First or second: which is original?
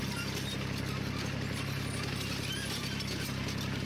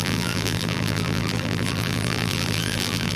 first